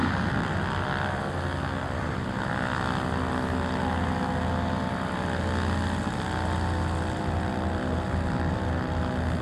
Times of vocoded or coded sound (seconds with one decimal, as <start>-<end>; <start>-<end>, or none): 0.0-1.2